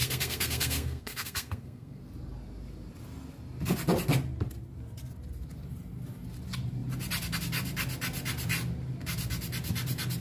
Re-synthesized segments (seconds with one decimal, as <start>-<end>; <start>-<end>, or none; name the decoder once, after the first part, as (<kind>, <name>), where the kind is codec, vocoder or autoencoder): 0.0-2.0 (codec, SNAC)